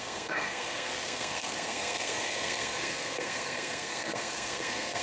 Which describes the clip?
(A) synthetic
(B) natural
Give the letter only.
A